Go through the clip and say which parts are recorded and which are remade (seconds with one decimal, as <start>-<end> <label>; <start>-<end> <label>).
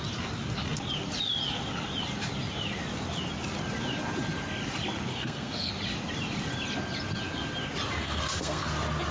0.0-5.1 recorded; 5.1-5.7 remade; 5.7-8.0 recorded; 8.0-8.7 remade; 8.7-9.1 recorded